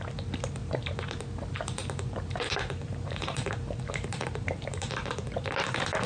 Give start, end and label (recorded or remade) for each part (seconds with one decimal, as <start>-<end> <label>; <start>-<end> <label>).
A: 0.0-0.6 recorded; 0.6-1.2 remade; 1.2-1.8 recorded; 1.8-5.5 remade; 5.5-6.1 recorded